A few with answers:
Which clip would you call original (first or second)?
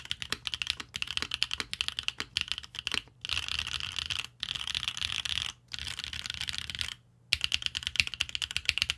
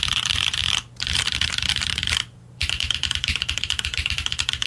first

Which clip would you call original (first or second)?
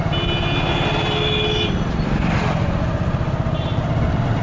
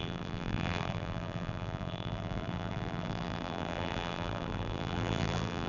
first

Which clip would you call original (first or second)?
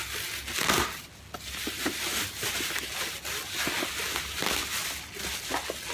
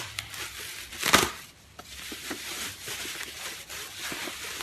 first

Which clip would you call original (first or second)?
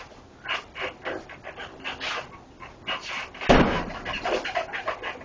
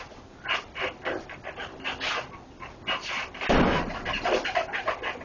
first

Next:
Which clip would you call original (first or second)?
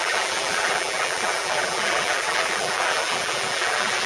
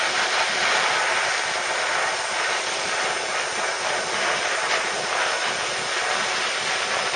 second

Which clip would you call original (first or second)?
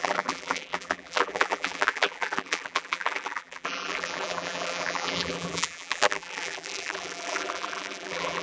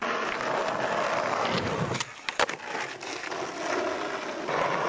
second